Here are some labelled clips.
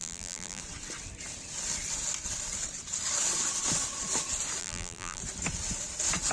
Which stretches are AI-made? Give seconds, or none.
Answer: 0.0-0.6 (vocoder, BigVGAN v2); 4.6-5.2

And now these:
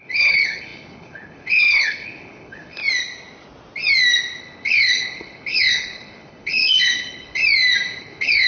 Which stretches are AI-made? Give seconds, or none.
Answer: 0.0-2.8 (codec, HILCodec); 4.4-7.4; 8.0-8.5

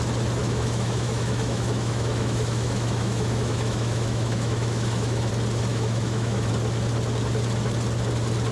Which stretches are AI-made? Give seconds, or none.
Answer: 0.4-5.3 (autoencoder, DAC-VAE); 5.7-6.5

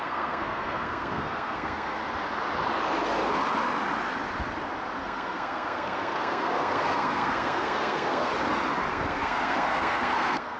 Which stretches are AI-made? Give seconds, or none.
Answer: 0.0-2.0 (codec, SNAC); 5.0-8.3; 8.9-10.6

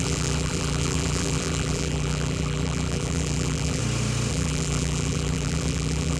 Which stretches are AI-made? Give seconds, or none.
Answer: 0.0-3.8 (vocoder, BigVGAN v2); 4.3-6.2

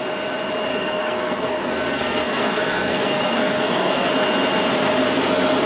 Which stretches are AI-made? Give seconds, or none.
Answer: 0.7-4.1 (codec, SNAC)

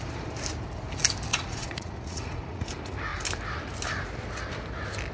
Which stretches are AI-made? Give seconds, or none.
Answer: 1.3-2.7 (vocoder, Vocos)